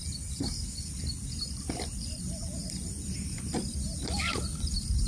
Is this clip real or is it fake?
real